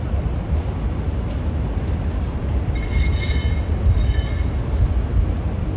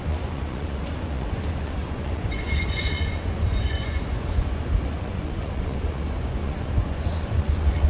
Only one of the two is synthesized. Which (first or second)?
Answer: second